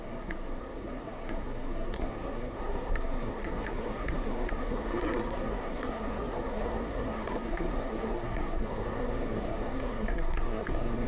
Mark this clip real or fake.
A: fake